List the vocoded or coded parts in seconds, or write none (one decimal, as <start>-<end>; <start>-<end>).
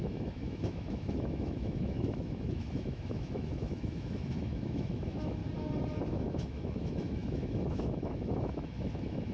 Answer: 0.0-5.4; 6.1-9.3